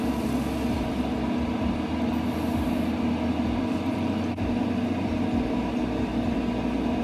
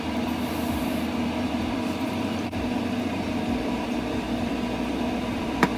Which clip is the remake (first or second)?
second